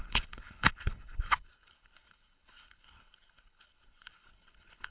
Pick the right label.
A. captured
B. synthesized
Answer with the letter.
B